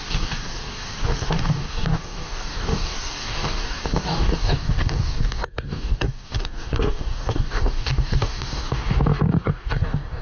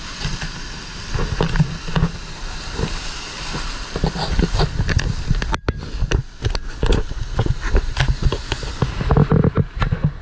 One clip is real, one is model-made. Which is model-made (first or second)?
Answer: first